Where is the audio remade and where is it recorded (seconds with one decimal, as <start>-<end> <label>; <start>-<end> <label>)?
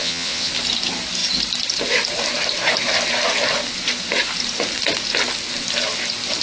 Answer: 0.0-0.5 remade; 0.5-6.4 recorded